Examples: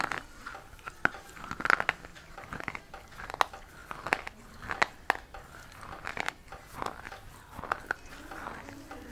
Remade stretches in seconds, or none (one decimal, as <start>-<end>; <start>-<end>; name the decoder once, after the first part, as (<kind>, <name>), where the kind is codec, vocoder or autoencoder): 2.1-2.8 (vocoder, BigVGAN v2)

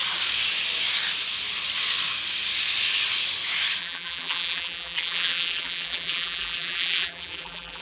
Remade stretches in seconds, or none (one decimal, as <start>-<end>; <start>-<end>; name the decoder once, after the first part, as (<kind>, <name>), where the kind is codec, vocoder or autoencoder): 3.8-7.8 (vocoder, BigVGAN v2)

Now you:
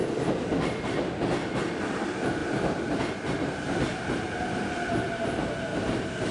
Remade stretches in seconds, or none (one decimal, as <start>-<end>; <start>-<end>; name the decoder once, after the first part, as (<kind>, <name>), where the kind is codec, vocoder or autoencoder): 1.7-5.7 (vocoder, BigVGAN v2)

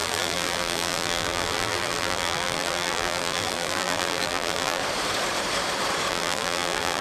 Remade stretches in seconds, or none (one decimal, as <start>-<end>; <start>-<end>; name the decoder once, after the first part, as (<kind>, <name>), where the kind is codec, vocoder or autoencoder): 0.0-4.8 (vocoder, BigVGAN v2); 6.1-7.0